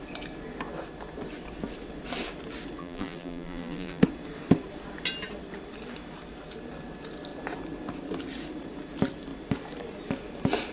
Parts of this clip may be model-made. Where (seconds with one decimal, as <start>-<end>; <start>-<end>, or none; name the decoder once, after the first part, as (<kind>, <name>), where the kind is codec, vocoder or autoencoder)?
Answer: 2.8-4.0 (vocoder, BigVGAN v2)